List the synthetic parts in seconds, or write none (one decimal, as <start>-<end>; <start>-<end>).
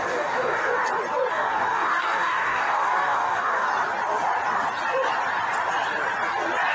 0.0-0.8; 1.3-3.7